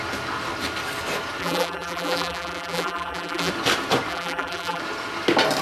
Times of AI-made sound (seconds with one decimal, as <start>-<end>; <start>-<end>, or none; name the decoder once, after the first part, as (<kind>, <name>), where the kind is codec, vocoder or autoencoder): 1.4-3.5 (vocoder, BigVGAN v2); 4.1-4.8